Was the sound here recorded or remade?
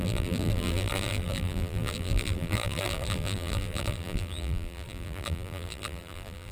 remade